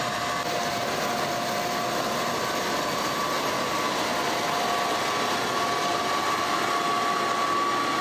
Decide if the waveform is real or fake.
real